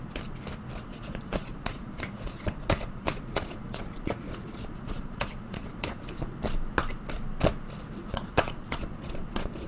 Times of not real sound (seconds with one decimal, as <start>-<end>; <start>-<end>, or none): 0.9-6.0; 8.0-9.7